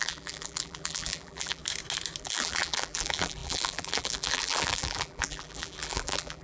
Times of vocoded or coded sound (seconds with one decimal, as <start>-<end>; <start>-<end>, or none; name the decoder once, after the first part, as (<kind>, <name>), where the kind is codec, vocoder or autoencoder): 0.0-1.6 (vocoder, BigVGAN v2); 2.2-6.4